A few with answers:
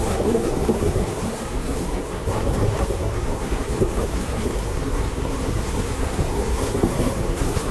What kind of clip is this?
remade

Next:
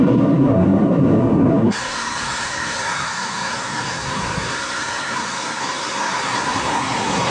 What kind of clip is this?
remade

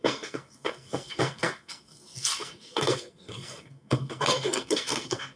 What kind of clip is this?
remade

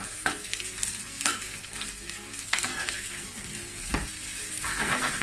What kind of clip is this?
remade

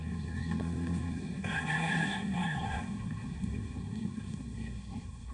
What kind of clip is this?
remade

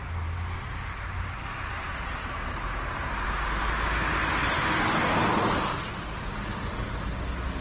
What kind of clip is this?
recorded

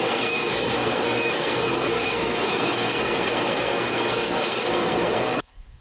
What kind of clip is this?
remade